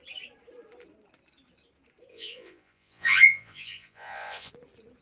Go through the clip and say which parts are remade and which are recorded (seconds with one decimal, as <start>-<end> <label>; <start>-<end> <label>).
0.0-2.1 recorded; 2.1-4.5 remade; 4.5-5.0 recorded